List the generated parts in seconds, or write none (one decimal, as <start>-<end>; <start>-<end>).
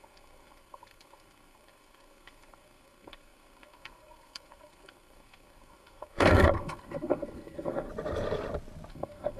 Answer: 0.0-7.9; 8.9-9.4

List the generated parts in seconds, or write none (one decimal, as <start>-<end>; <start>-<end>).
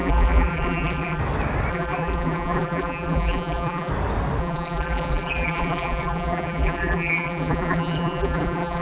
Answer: 0.0-1.2; 1.7-3.9; 4.4-8.8